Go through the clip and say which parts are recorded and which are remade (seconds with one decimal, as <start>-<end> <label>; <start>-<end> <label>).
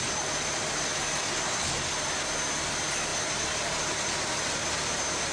0.0-5.3 recorded